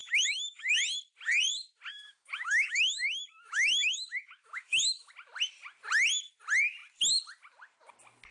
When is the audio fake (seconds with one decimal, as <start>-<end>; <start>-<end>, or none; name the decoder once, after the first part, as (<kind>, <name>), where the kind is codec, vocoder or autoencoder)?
0.0-0.7 (autoencoder, DAC-VAE); 1.9-5.1